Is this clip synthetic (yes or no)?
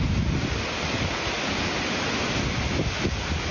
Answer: no